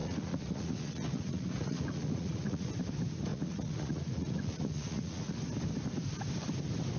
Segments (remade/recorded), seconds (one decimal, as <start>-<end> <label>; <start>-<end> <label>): 0.0-2.7 remade; 2.7-3.3 recorded; 3.3-5.4 remade; 5.4-7.0 recorded